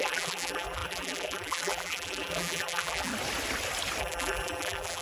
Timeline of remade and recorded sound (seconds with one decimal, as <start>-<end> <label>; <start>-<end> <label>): 0.0-3.1 remade; 3.1-4.0 recorded; 4.0-5.0 remade

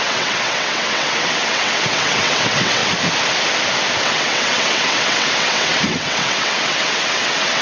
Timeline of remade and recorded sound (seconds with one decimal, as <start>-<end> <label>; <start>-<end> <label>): 0.0-2.8 remade; 2.8-4.0 recorded; 4.0-7.6 remade

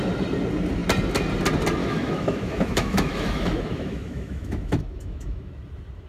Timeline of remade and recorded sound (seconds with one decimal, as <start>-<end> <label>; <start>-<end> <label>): 0.0-1.8 recorded; 1.8-5.5 remade; 5.5-6.1 recorded

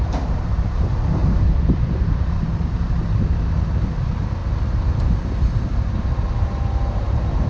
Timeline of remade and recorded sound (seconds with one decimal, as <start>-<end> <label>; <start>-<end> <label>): 0.0-4.4 remade; 4.4-6.4 recorded; 6.4-7.5 remade

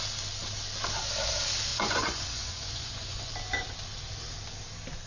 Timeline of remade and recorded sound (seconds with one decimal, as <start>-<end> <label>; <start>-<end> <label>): 0.0-1.7 recorded; 1.7-3.3 remade; 3.3-5.1 recorded

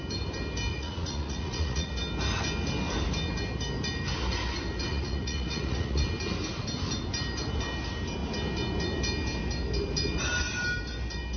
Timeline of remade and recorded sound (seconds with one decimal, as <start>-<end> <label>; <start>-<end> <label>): 0.0-0.7 recorded; 0.7-1.9 remade; 1.9-4.9 recorded; 4.9-6.0 remade; 6.0-11.4 recorded

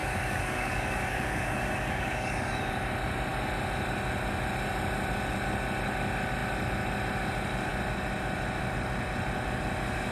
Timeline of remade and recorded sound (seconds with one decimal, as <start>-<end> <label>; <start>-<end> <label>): 0.0-2.7 remade; 2.7-10.1 recorded